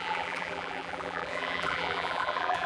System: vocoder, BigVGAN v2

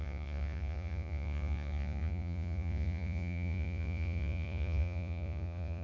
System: vocoder, Vocos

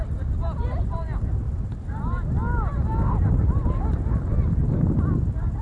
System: none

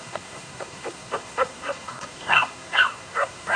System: codec, SNAC